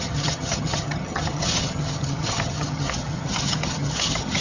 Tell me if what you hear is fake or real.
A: fake